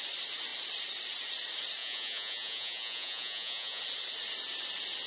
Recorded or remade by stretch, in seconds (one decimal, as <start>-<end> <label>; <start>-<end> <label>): 0.0-1.8 recorded; 1.8-3.8 remade; 3.8-5.1 recorded